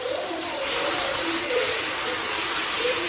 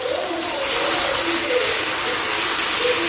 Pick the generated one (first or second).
first